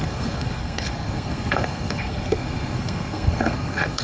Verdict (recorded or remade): remade